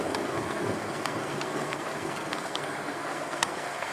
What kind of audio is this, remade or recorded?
remade